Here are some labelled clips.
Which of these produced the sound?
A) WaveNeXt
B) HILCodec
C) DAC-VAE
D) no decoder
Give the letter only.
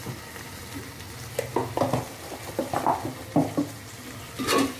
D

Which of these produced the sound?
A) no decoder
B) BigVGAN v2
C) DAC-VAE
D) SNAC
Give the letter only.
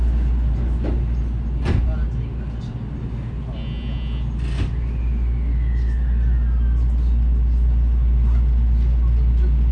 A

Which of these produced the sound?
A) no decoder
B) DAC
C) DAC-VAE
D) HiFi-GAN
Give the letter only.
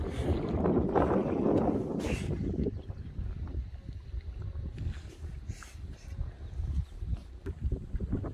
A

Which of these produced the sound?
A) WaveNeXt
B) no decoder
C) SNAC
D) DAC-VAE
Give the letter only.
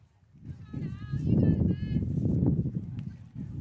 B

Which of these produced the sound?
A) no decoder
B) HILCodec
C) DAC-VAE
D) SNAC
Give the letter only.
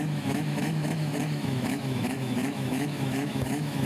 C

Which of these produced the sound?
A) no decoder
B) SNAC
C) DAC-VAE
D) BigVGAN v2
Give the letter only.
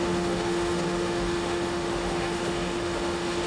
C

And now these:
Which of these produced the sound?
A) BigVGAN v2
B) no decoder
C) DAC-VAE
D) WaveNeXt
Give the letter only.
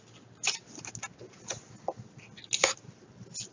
B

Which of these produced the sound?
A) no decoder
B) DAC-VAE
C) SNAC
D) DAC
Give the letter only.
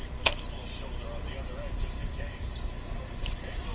A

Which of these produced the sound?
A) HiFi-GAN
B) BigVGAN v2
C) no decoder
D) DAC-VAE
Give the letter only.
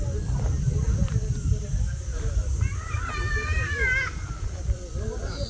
C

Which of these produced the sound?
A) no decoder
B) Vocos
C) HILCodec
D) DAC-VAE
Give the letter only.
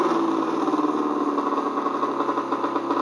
A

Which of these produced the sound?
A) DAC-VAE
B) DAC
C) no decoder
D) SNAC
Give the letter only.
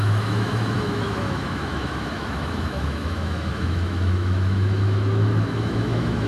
A